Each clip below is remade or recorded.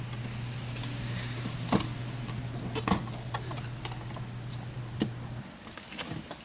recorded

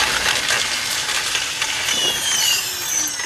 recorded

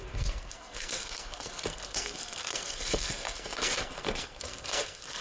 remade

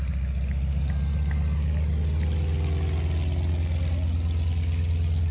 recorded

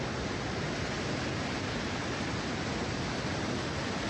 recorded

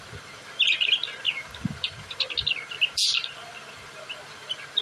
recorded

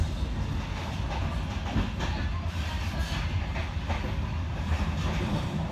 recorded